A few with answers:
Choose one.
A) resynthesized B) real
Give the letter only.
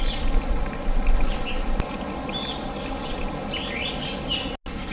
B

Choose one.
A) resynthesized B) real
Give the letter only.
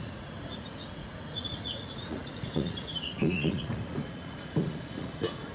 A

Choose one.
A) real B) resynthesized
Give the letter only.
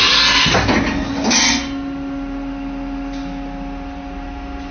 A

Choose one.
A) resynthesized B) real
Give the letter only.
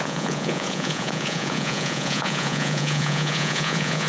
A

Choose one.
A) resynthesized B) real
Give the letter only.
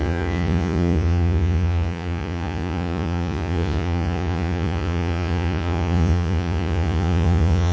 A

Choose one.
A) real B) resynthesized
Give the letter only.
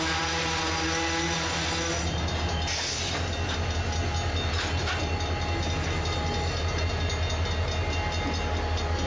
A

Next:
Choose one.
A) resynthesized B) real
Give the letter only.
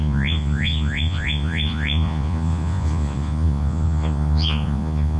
A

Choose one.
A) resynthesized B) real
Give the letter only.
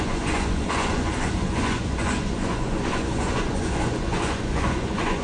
A